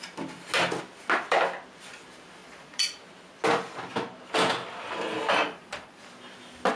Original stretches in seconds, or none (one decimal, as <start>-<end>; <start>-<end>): 0.0-2.4; 3.0-5.4; 6.1-6.8